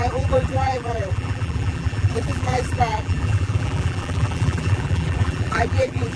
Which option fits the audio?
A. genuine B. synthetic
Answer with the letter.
B